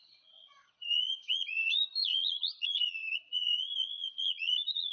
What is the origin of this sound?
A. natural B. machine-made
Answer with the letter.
B